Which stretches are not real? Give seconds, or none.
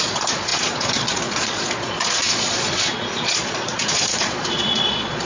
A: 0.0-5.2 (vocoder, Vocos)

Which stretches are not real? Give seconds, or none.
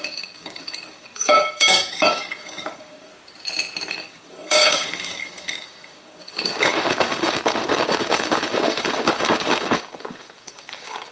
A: 0.0-3.1 (codec, DAC); 3.9-11.1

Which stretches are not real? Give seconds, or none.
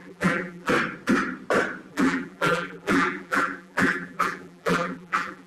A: 0.0-0.7 (vocoder, BigVGAN v2); 1.9-5.5